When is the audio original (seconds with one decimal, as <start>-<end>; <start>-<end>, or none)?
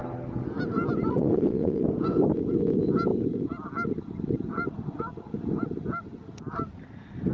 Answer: 0.0-1.1; 1.8-7.3